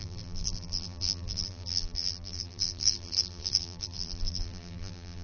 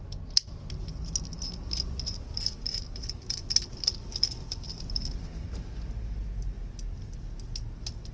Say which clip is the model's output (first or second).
first